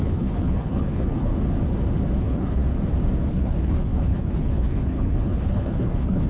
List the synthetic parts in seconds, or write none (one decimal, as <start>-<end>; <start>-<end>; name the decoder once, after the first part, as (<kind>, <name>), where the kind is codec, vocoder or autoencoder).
0.0-1.3 (codec, HILCodec); 2.2-2.6; 3.3-6.3